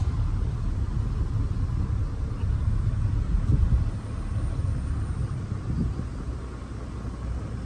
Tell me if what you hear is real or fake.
real